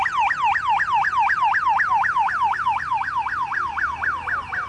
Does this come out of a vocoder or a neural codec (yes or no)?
no